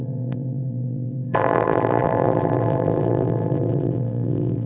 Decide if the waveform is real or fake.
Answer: fake